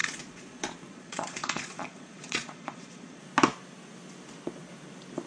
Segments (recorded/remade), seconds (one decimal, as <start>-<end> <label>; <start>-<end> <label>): 0.0-3.2 remade; 3.2-5.3 recorded